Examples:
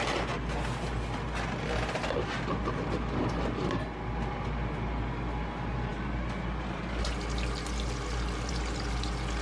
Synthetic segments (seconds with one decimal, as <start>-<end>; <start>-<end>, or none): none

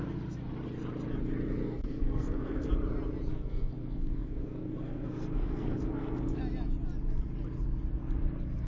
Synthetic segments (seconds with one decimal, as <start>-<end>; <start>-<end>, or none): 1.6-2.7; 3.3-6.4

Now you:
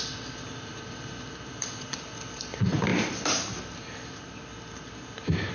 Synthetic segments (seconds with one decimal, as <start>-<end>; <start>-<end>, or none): 0.0-2.9

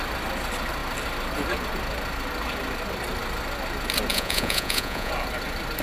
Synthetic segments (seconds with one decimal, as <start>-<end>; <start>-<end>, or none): 4.1-5.1

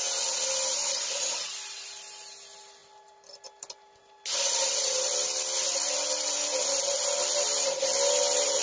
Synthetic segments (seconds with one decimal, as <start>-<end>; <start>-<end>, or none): none

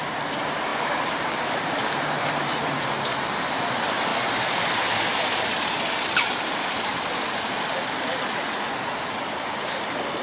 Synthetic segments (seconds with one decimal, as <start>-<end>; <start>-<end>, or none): 0.7-2.6